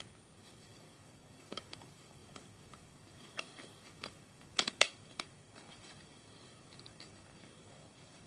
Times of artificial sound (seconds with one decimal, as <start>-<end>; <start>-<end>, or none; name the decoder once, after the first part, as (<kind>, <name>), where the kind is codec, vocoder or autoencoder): 0.0-8.3 (codec, DAC)